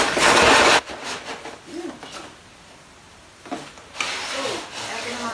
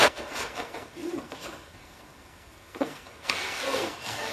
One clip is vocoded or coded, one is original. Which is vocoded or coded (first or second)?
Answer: second